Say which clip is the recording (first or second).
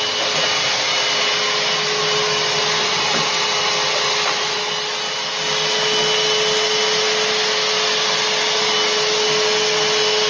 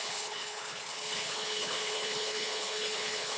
first